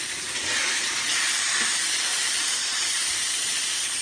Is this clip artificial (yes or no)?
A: no